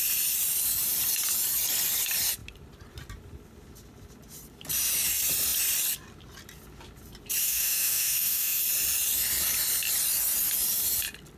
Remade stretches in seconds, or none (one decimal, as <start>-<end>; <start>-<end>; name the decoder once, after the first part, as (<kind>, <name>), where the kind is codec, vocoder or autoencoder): 7.4-8.6 (autoencoder, DAC-VAE)